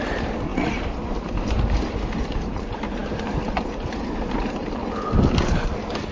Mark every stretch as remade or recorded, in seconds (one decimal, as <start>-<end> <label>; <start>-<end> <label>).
0.0-4.8 remade; 4.8-6.1 recorded